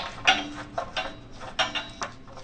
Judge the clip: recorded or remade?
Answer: recorded